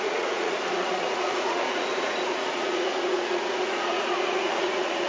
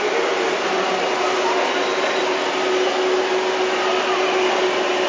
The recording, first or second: second